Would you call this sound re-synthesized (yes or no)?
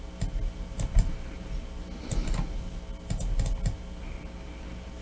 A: no